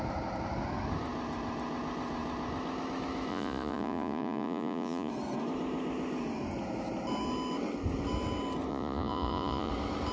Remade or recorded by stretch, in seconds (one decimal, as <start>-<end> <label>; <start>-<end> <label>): 0.0-3.3 recorded; 3.3-5.1 remade; 5.1-8.7 recorded; 8.7-9.7 remade; 9.7-10.1 recorded